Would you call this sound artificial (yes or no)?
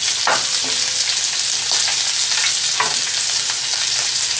no